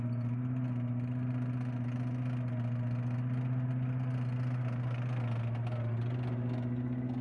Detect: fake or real real